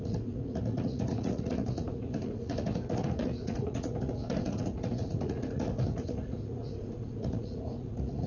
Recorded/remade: remade